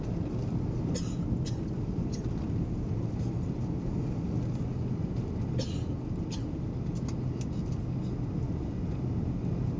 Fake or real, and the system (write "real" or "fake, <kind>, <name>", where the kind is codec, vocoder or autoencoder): real